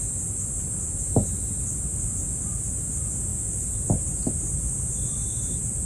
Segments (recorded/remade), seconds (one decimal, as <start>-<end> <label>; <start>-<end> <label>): 0.0-5.9 recorded